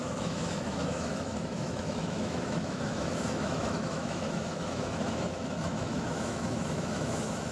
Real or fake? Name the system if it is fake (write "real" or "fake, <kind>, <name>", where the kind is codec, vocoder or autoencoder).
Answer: fake, autoencoder, DAC-VAE